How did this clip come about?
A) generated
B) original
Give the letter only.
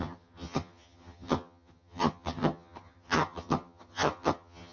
A